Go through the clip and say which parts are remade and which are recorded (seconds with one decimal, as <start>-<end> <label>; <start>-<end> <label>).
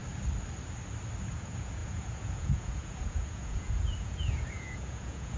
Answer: 0.0-1.3 recorded; 1.3-5.4 remade